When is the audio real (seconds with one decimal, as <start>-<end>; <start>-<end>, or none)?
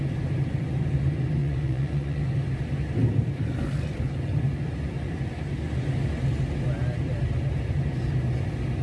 0.0-1.4; 2.2-8.8